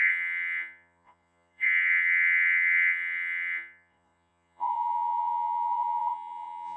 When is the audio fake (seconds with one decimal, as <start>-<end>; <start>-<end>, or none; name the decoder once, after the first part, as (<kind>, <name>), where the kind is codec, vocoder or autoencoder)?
0.0-6.8 (vocoder, Vocos)